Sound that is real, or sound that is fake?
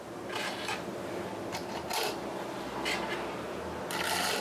real